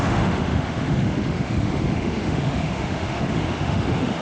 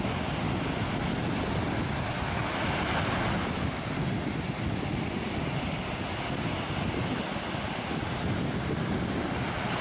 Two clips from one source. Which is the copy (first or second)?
first